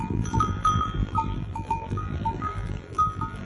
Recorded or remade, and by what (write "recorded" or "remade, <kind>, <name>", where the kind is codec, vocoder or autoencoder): remade, vocoder, BigVGAN v2